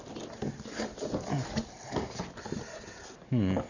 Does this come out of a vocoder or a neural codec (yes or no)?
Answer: no